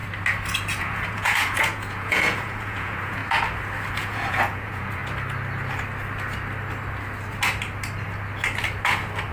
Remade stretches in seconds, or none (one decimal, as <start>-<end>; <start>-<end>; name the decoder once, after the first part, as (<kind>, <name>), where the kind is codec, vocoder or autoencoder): 0.8-3.2 (vocoder, Vocos); 3.9-5.0